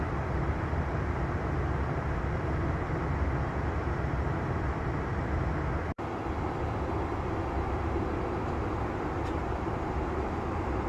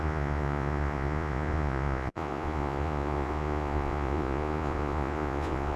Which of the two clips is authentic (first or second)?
first